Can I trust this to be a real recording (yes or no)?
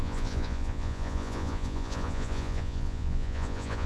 no